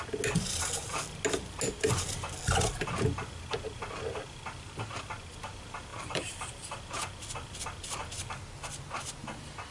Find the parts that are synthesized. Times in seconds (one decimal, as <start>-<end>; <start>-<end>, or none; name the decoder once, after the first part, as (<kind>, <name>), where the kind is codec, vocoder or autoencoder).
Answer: 5.9-6.5 (vocoder, BigVGAN v2)